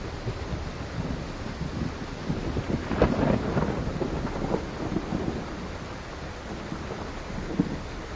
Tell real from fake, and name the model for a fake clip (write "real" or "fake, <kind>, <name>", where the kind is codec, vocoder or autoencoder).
real